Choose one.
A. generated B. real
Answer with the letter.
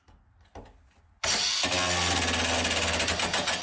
B